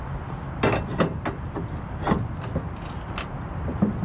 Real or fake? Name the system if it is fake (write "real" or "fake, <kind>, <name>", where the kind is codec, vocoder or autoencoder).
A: real